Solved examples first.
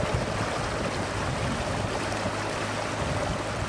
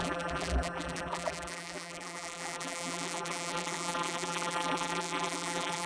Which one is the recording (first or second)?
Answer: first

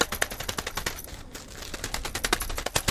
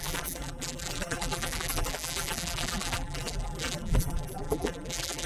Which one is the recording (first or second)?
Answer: first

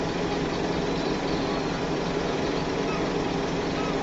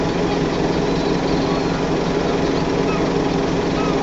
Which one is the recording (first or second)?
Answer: second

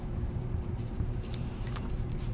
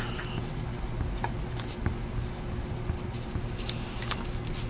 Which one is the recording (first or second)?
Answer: second